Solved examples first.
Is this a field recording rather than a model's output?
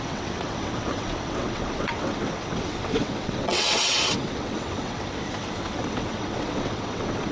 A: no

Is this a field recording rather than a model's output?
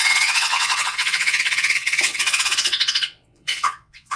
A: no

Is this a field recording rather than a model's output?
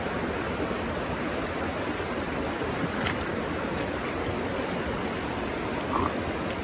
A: yes